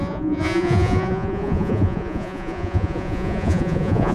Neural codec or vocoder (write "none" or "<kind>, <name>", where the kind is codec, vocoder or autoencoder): vocoder, Vocos